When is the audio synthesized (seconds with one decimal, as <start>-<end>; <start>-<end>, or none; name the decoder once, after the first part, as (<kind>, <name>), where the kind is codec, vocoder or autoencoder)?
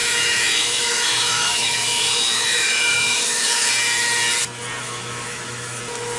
0.0-3.7 (autoencoder, DAC-VAE); 4.8-5.8